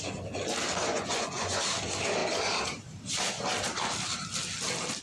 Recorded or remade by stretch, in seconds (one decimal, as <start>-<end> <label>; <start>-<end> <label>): 0.0-0.9 recorded; 0.9-1.6 remade; 1.6-5.0 recorded